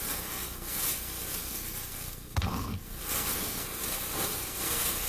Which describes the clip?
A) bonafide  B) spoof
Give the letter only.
B